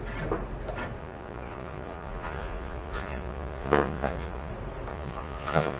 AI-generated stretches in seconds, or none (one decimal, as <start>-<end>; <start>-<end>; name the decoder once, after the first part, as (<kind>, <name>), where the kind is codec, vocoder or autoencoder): 1.0-4.5 (vocoder, Vocos); 4.9-5.8